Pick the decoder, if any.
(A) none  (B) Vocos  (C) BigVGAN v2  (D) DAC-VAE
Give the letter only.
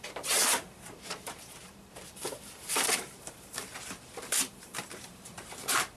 C